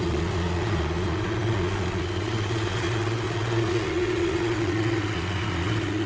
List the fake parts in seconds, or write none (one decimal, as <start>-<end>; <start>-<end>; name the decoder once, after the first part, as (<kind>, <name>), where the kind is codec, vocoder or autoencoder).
0.0-6.1 (vocoder, Vocos)